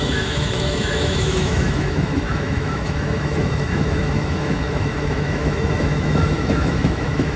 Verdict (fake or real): fake